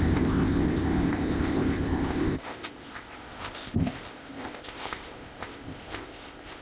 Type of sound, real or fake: fake